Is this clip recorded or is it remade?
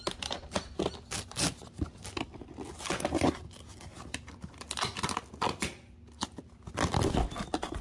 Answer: recorded